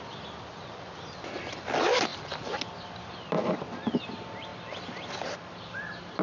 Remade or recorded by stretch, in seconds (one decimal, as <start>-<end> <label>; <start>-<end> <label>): 0.0-6.2 recorded